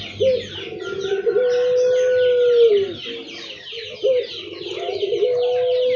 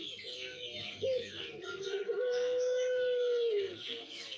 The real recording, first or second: first